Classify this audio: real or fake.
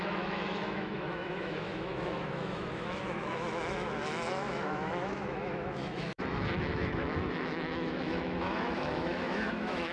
fake